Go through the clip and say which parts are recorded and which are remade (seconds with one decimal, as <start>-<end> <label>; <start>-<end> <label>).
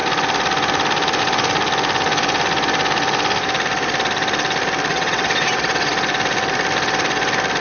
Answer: 0.0-4.9 recorded; 4.9-5.9 remade; 5.9-7.6 recorded